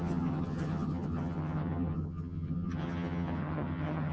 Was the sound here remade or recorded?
remade